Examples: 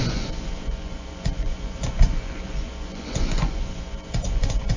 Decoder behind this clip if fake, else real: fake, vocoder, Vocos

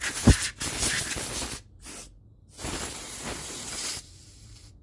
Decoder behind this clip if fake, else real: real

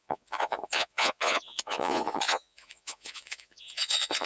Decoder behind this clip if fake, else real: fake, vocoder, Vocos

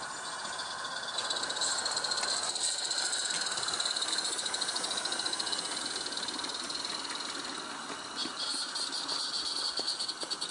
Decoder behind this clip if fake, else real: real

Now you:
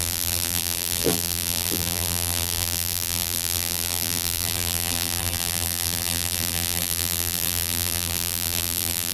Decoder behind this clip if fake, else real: fake, vocoder, BigVGAN v2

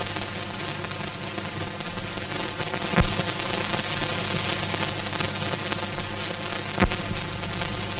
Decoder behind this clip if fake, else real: real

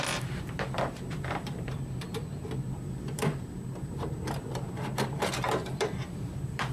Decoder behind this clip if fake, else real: fake, vocoder, BigVGAN v2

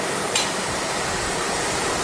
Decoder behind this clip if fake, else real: fake, vocoder, BigVGAN v2